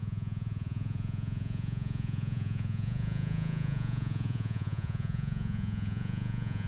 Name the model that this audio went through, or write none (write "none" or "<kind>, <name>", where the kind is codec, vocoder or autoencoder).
vocoder, Vocos